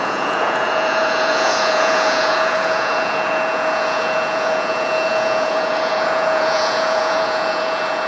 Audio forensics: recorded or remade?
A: remade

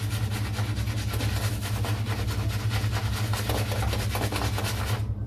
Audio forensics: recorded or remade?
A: recorded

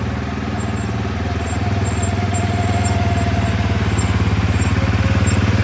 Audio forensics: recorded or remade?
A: recorded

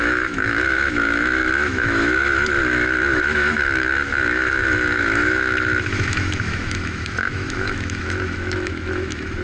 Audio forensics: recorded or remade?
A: remade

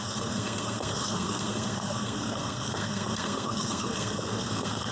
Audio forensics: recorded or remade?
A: remade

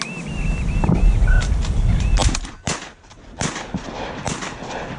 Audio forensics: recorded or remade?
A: recorded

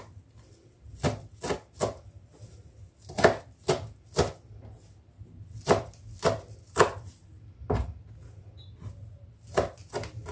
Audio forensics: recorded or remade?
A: recorded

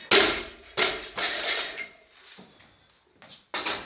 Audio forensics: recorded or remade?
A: recorded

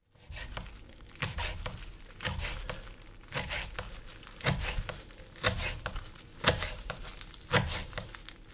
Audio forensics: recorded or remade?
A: recorded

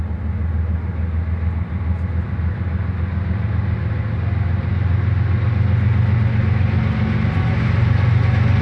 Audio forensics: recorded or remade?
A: recorded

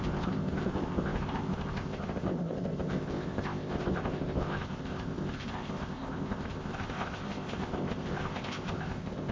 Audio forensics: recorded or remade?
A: remade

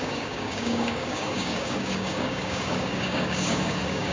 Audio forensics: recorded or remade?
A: remade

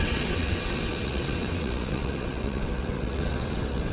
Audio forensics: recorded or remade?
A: remade